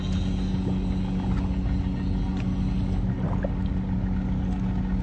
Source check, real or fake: real